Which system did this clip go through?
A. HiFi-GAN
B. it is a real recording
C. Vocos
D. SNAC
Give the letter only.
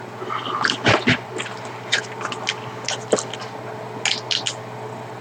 B